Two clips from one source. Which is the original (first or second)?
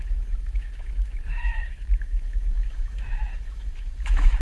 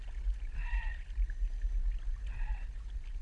second